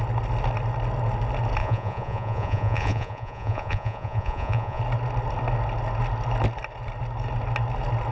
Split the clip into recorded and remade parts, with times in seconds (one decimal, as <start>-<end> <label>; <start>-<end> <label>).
0.0-1.6 recorded; 1.6-4.8 remade; 4.8-8.1 recorded